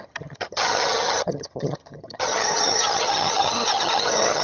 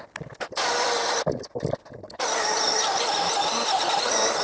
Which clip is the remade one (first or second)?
first